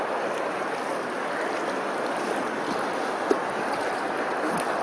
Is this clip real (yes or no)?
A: yes